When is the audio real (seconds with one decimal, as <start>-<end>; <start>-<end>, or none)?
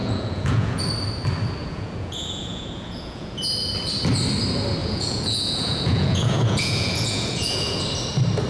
0.8-1.6; 3.4-4.8; 7.8-8.5